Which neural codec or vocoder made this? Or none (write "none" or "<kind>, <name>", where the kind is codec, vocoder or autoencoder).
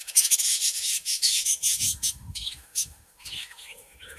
autoencoder, DAC-VAE